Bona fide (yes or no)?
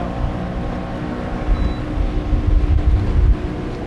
yes